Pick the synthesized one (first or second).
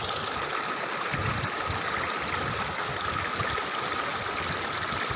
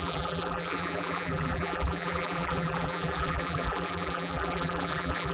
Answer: second